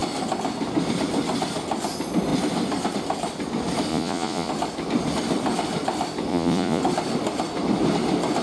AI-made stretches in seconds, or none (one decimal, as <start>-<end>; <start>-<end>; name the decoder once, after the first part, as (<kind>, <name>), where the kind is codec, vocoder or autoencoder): 3.9-4.5 (vocoder, Vocos); 6.3-6.8